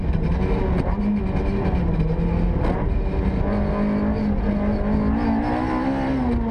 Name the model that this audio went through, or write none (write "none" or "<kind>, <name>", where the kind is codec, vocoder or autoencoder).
none